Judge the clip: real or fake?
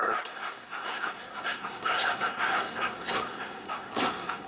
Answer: fake